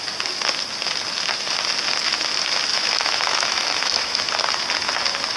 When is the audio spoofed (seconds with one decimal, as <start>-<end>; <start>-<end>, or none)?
2.7-4.3